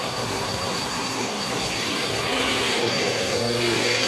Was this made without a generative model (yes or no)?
no